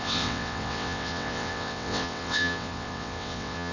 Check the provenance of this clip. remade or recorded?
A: remade